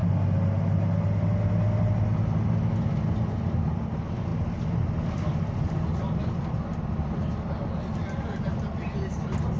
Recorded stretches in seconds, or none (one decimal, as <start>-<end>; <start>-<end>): 0.0-9.6